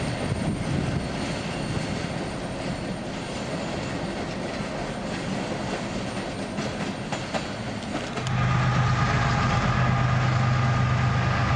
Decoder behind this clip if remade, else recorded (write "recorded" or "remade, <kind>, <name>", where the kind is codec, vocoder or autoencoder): recorded